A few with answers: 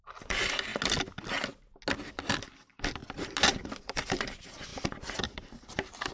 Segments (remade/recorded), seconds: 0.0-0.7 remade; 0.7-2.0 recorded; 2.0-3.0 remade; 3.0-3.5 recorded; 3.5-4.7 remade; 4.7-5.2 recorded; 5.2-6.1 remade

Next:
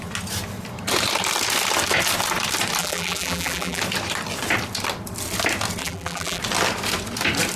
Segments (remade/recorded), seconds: 0.0-2.8 recorded; 2.8-3.8 remade; 3.8-5.8 recorded; 5.8-6.4 remade; 6.4-7.6 recorded